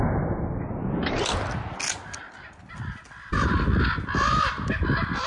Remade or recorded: recorded